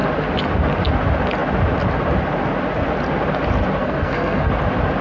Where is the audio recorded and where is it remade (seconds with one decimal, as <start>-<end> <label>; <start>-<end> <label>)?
0.0-3.8 recorded; 3.8-4.5 remade; 4.5-5.0 recorded